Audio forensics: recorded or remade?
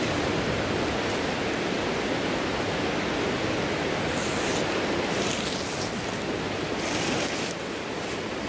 recorded